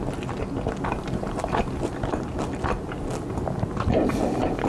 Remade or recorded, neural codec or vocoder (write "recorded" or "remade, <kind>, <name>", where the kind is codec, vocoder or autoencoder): recorded